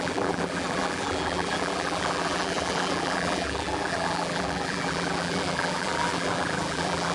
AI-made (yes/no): yes